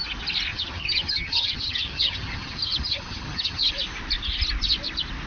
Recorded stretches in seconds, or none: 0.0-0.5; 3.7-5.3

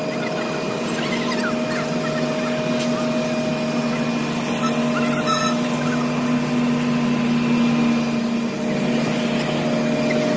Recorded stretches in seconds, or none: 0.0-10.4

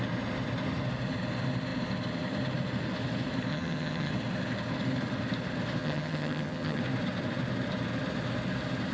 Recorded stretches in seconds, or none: 0.0-3.5; 4.1-5.8; 6.8-8.9

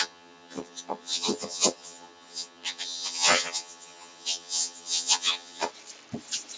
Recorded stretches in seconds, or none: 5.7-6.6

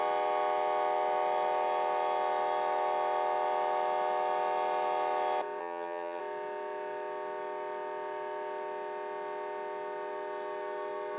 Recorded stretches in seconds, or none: 0.0-5.6; 6.2-11.2